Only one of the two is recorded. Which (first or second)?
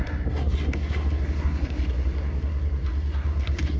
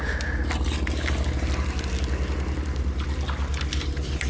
second